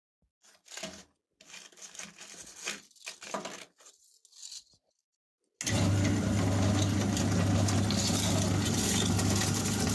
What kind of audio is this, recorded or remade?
recorded